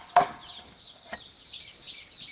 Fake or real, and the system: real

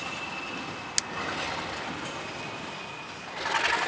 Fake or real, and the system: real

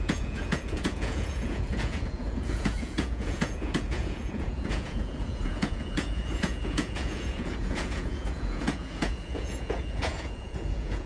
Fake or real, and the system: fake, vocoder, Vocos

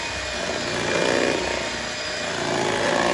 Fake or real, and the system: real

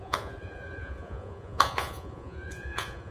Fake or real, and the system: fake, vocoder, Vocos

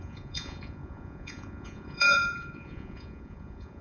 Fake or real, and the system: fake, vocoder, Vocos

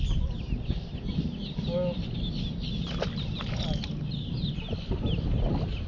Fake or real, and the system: real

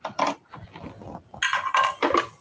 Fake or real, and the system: real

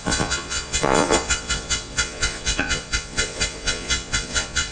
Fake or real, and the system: fake, vocoder, Vocos